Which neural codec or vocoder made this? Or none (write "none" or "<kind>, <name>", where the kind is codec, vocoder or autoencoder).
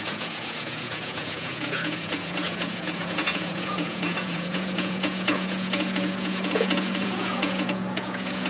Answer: vocoder, Vocos